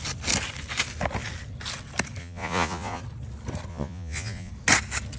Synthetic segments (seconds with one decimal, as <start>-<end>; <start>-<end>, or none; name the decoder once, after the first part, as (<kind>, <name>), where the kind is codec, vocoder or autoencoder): 2.2-3.0 (vocoder, Vocos); 3.7-4.5